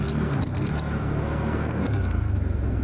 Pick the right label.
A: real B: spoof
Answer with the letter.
B